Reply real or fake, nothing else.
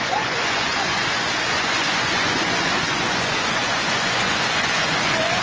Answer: fake